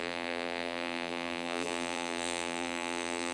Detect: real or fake fake